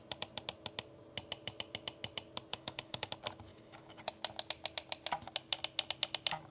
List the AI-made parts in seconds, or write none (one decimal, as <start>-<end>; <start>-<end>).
2.5-3.1; 3.5-4.1